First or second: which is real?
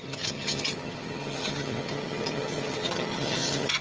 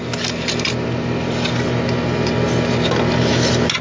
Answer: second